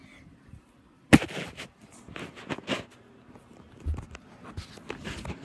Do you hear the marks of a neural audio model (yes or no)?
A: no